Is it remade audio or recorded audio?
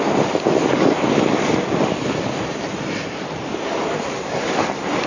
remade